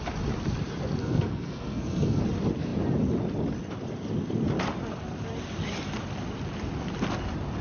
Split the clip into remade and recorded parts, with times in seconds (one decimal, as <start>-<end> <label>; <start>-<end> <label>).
0.0-1.0 recorded; 1.0-2.2 remade; 2.2-7.6 recorded